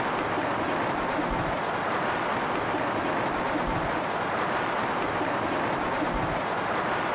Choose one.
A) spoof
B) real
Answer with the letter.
B